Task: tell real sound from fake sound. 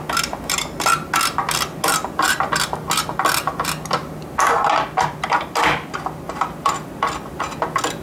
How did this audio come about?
real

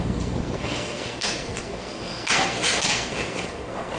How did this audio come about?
fake